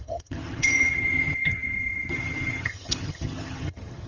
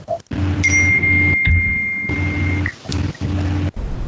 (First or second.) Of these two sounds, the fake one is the first